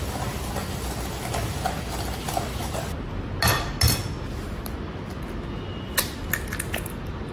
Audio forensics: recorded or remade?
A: recorded